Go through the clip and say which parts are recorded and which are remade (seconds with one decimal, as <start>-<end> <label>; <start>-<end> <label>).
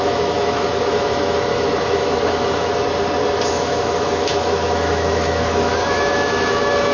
0.0-2.7 remade; 2.7-3.5 recorded; 3.5-6.9 remade